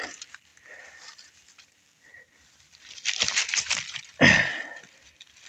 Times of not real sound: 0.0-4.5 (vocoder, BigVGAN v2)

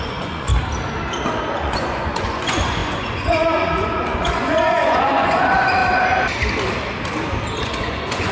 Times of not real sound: 0.0-0.5 (vocoder, Vocos); 1.5-5.8; 7.6-8.3

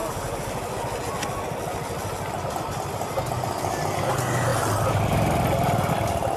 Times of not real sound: none